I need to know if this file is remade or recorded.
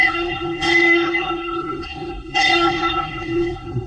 remade